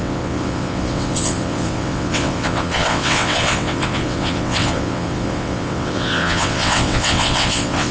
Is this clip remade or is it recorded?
remade